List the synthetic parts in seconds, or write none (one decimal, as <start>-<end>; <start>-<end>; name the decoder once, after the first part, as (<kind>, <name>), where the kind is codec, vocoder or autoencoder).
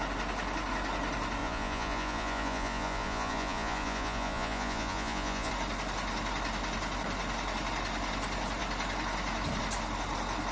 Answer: 1.4-5.5 (vocoder, Vocos)